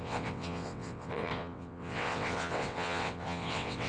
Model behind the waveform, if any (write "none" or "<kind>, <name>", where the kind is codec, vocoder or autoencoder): vocoder, WaveNeXt